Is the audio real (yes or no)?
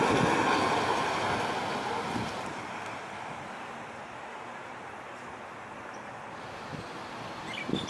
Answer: yes